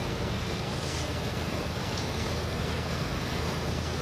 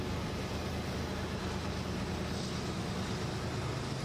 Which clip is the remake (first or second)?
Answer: first